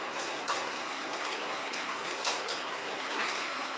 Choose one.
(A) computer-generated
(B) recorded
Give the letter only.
A